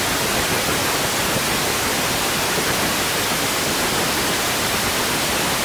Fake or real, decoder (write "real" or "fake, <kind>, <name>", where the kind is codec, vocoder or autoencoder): real